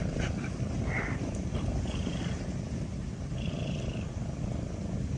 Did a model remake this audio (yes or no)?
yes